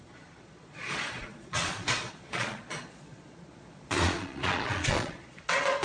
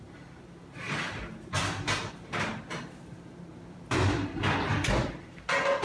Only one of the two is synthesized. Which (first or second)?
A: first